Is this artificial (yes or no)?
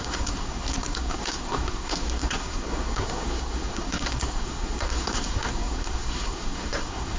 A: yes